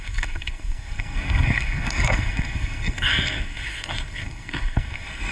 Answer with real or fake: fake